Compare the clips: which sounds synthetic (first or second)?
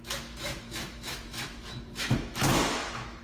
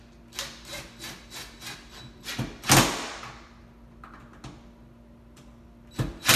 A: first